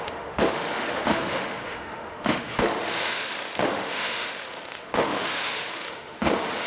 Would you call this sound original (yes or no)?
no